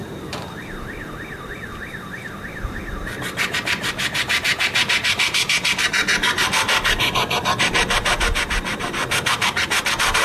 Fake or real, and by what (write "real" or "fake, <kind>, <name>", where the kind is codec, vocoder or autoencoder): fake, vocoder, BigVGAN v2